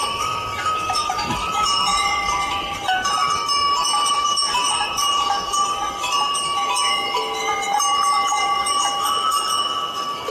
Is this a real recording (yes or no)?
no